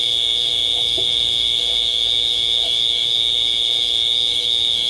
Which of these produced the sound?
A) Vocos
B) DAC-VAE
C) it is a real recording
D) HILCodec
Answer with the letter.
B